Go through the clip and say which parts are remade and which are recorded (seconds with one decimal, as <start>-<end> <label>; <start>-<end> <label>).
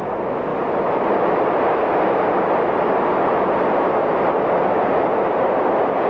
0.0-6.1 recorded